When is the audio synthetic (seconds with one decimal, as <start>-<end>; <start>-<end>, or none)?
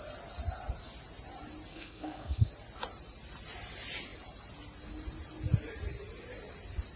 1.7-2.5